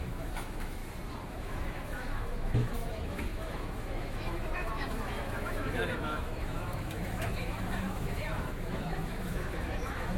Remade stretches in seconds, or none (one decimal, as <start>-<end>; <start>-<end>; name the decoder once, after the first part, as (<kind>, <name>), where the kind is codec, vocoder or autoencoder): 0.0-0.8 (autoencoder, DAC-VAE); 1.3-10.2